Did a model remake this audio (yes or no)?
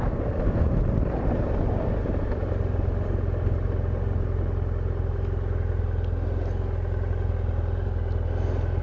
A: no